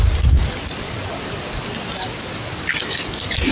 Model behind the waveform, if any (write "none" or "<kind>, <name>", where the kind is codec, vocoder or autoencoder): none